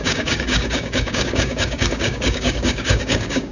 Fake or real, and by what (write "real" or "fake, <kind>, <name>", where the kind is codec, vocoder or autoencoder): fake, codec, DAC